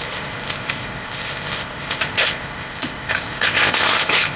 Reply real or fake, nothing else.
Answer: fake